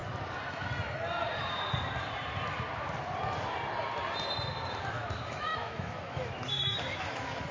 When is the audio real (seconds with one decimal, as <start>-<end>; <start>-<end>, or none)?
0.0-4.5